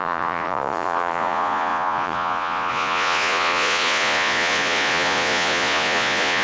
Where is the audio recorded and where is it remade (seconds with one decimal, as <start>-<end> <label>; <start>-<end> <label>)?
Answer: 0.0-6.4 remade

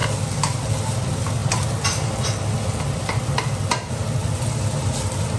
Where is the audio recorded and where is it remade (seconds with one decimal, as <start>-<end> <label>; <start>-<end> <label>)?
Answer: 0.0-5.4 recorded

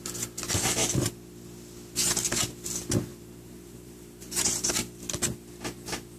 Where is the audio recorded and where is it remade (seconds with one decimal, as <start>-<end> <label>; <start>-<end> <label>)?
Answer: 0.0-3.1 recorded; 3.1-4.7 remade; 4.7-6.2 recorded

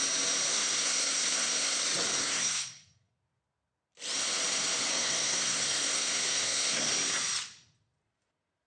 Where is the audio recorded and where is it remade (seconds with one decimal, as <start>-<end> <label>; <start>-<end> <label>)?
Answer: 0.0-0.5 recorded; 0.5-1.8 remade; 1.8-2.2 recorded; 2.2-3.1 remade; 3.1-4.9 recorded; 4.9-6.9 remade; 6.9-8.7 recorded

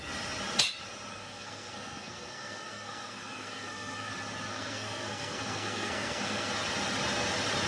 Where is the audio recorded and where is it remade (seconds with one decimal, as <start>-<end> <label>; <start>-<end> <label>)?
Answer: 0.0-1.1 recorded; 1.1-4.1 remade; 4.1-4.5 recorded; 4.5-6.5 remade; 6.5-7.7 recorded

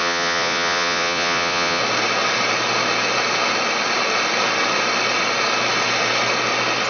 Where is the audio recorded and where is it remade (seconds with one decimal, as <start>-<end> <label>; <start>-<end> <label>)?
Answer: 0.0-1.8 remade; 1.8-6.9 recorded